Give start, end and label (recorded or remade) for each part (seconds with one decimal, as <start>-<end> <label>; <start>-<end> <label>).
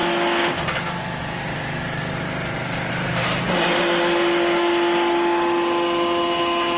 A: 0.0-1.2 recorded; 1.2-3.4 remade; 3.4-6.8 recorded